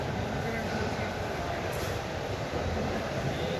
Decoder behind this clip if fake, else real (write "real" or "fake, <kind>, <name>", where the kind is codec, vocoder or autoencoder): fake, vocoder, BigVGAN v2